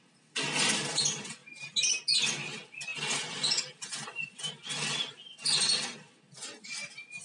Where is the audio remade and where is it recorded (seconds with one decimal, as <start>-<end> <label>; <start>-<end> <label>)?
0.0-7.2 recorded